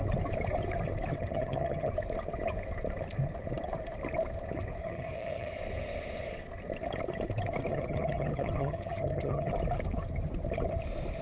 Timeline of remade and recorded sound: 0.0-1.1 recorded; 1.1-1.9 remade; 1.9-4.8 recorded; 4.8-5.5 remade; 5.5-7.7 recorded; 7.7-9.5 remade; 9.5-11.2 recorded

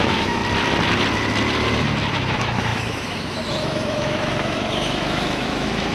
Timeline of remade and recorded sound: 0.0-0.4 remade; 0.4-2.1 recorded; 2.1-5.9 remade

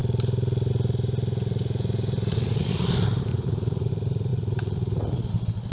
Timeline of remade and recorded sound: 0.0-2.3 recorded; 2.3-2.8 remade; 2.8-3.3 recorded; 3.3-3.9 remade; 3.9-4.3 recorded; 4.3-5.3 remade; 5.3-5.7 recorded